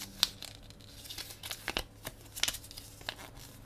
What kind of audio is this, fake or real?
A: real